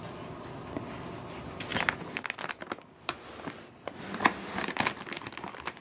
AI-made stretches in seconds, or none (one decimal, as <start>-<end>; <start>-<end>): none